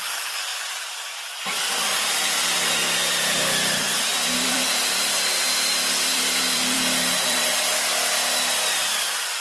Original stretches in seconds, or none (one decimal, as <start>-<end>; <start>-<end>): 0.0-0.5; 5.1-6.1; 7.5-9.4